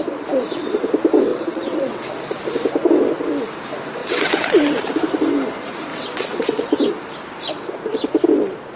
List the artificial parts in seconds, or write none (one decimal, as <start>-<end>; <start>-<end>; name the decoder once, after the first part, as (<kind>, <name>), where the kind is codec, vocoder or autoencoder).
1.3-2.1 (vocoder, WaveNeXt); 4.0-4.8; 5.9-6.9